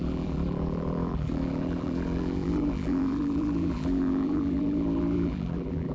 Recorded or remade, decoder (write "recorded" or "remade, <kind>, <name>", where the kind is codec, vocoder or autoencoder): remade, vocoder, BigVGAN v2